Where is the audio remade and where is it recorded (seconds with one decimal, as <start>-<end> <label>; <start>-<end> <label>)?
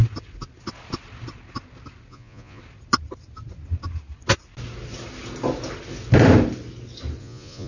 0.0-2.1 recorded; 2.1-2.6 remade; 2.6-7.2 recorded; 7.2-7.7 remade